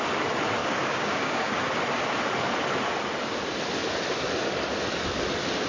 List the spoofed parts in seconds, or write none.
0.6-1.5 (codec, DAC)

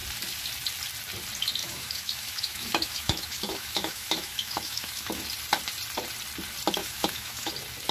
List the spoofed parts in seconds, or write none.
1.6-5.2 (autoencoder, DAC-VAE); 6.8-7.5

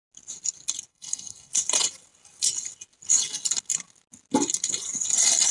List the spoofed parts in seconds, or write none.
0.9-1.5 (codec, SNAC)

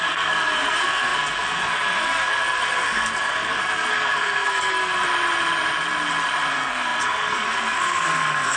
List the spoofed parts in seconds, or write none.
0.0-5.0 (codec, SNAC); 6.5-8.6

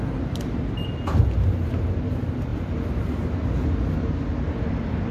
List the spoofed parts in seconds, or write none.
none

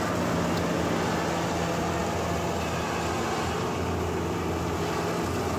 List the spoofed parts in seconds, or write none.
none

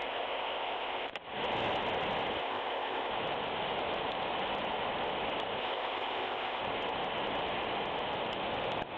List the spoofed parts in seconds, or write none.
0.0-1.1 (codec, ZipCodec); 2.4-3.1; 5.6-6.6

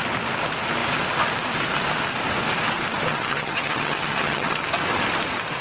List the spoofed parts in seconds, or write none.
3.1-4.6 (vocoder, HiFi-GAN)